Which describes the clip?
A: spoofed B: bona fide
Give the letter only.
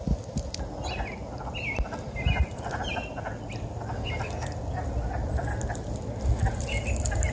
B